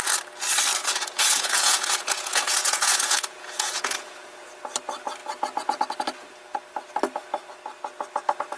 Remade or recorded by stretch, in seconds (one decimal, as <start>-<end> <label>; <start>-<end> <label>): 0.0-0.8 recorded; 0.8-4.5 remade; 4.5-8.6 recorded